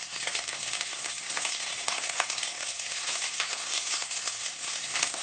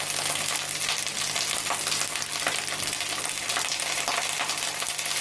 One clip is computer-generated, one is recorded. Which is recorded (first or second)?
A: second